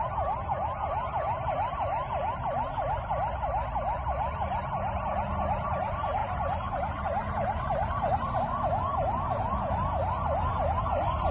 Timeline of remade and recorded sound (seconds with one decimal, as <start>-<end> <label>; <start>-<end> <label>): 0.0-6.2 recorded; 6.2-8.4 remade; 8.4-8.9 recorded; 8.9-9.9 remade; 9.9-11.3 recorded